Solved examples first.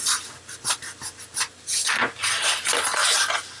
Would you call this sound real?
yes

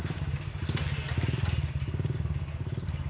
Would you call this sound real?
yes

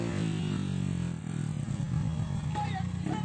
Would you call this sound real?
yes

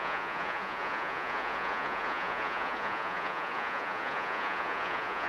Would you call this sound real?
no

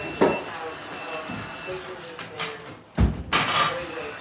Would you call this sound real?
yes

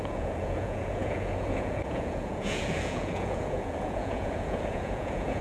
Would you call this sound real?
no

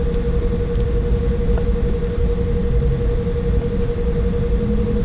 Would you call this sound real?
yes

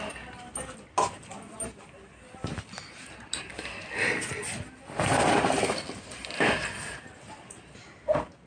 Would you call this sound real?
yes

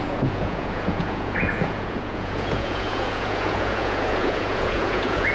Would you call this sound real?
no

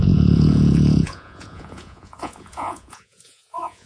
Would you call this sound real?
no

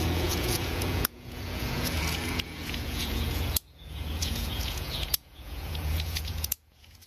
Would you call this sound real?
no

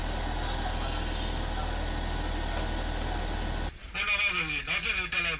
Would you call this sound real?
yes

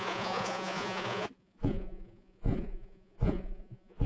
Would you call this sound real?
no